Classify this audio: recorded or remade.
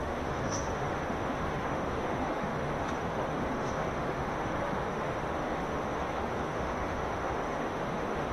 remade